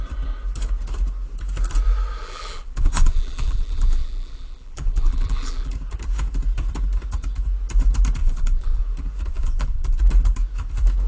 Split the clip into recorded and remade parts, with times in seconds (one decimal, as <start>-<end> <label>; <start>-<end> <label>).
0.0-2.2 recorded; 2.2-5.7 remade; 5.7-8.2 recorded; 8.2-8.8 remade; 8.8-9.3 recorded; 9.3-10.0 remade; 10.0-11.1 recorded